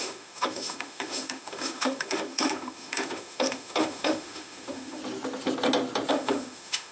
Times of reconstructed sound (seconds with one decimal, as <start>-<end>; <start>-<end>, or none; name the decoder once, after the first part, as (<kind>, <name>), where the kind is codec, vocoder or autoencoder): 0.0-5.0 (autoencoder, DAC-VAE); 6.1-6.9